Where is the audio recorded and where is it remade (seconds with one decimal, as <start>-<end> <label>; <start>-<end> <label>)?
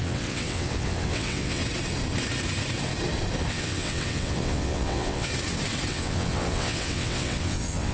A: 0.0-1.6 remade; 1.6-3.5 recorded; 3.5-5.3 remade; 5.3-5.9 recorded; 5.9-7.9 remade